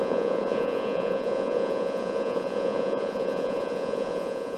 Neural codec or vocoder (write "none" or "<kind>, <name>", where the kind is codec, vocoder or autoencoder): vocoder, Vocos